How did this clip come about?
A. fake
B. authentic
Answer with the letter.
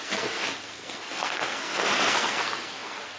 A